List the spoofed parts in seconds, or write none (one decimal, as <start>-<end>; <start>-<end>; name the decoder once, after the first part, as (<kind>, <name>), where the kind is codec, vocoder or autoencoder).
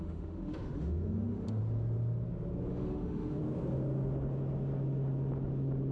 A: 0.0-1.6 (autoencoder, DAC-VAE); 2.7-3.4